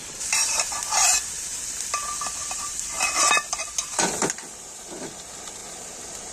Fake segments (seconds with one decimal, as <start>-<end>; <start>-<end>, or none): 0.0-0.7; 2.4-3.2